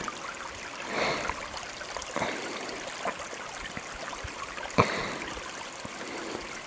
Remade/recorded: recorded